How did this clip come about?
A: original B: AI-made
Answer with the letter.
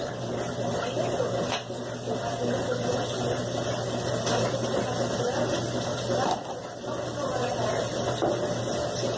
A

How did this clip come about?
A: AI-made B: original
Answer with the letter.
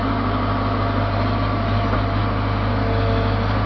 B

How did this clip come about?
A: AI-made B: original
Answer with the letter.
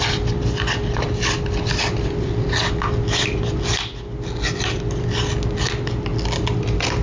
B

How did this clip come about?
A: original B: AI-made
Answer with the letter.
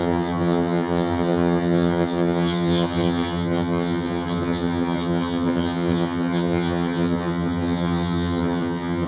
B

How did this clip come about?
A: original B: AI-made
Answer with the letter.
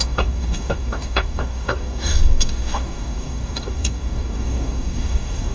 B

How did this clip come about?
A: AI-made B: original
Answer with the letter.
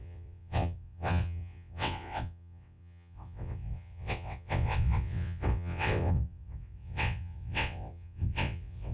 A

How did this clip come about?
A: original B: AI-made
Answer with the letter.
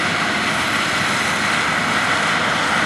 A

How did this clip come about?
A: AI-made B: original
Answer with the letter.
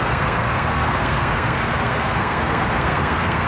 A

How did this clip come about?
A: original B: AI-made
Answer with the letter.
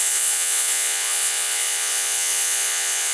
B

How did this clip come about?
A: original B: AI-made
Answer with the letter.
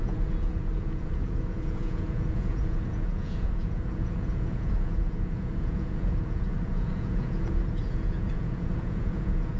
B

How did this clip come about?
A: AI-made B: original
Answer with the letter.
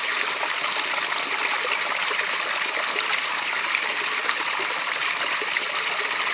B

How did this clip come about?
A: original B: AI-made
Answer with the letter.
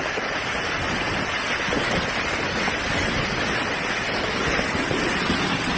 A